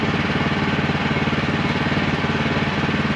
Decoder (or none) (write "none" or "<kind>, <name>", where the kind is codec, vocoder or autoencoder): none